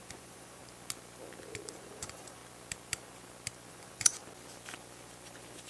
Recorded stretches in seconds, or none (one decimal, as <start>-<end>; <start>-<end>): 0.6-1.8; 2.4-3.7; 4.2-5.7